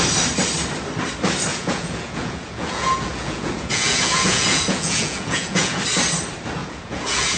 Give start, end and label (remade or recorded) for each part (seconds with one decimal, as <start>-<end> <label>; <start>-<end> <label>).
0.0-1.5 recorded; 1.5-5.8 remade; 5.8-6.6 recorded; 6.6-7.4 remade